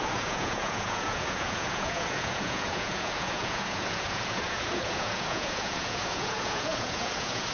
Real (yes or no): no